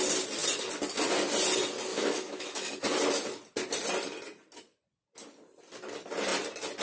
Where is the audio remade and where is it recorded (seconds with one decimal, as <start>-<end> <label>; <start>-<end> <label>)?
0.0-1.9 recorded; 1.9-2.7 remade; 2.7-6.8 recorded